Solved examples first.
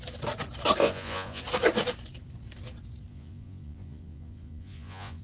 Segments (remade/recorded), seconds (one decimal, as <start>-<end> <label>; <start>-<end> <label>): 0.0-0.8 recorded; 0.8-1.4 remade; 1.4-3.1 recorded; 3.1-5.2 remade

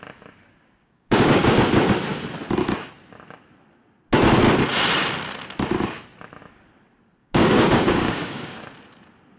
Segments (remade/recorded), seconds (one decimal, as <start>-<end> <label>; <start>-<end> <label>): 0.0-0.8 recorded; 0.8-1.6 remade; 1.6-7.2 recorded; 7.2-8.6 remade; 8.6-9.4 recorded

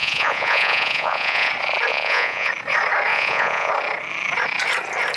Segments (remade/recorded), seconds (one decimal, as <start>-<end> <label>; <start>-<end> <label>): 0.0-1.5 remade; 1.5-1.9 recorded; 1.9-2.5 remade; 2.5-3.1 recorded; 3.1-3.7 remade; 3.7-5.2 recorded

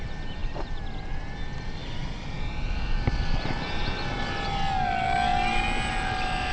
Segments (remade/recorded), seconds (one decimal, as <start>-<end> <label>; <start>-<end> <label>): 0.0-0.4 recorded; 0.4-1.2 remade; 1.2-1.8 recorded; 1.8-3.7 remade; 3.7-6.5 recorded

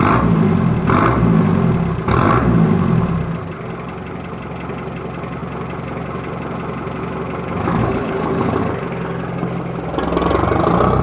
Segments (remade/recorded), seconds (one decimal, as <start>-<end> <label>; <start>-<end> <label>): 0.0-7.8 recorded; 7.8-8.6 remade; 8.6-11.0 recorded